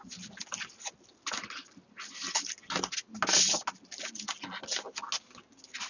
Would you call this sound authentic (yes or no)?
yes